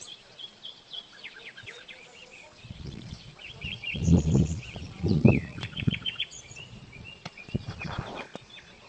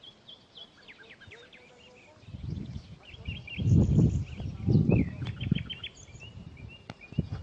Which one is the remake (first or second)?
first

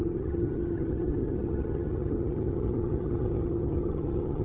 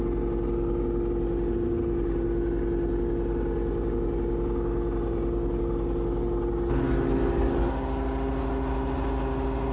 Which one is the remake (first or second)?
first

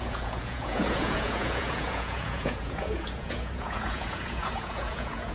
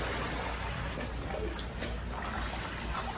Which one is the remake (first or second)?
first